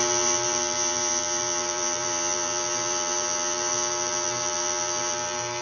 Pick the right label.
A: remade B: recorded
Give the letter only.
A